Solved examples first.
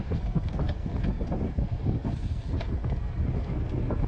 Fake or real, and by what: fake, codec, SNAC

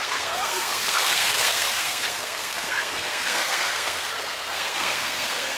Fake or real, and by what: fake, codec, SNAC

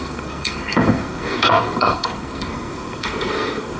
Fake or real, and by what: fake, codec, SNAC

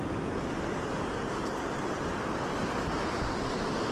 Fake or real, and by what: real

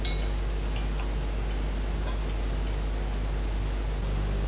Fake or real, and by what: real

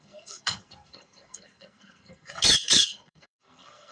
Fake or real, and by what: fake, codec, SNAC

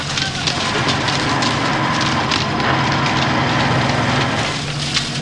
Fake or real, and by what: real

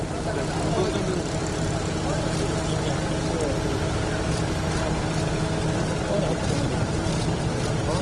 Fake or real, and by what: real